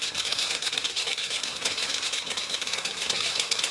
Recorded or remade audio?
remade